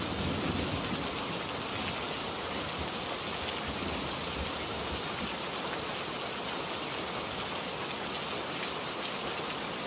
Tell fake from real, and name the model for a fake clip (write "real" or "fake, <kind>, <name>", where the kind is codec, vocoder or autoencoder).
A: real